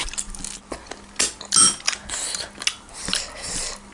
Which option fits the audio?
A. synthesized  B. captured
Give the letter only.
B